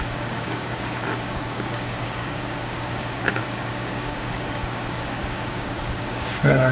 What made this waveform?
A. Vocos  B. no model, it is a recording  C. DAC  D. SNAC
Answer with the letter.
C